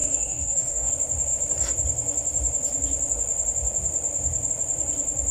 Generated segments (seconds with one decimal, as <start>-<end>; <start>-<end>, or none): 0.0-0.9